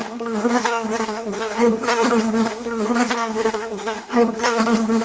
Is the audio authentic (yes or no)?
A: no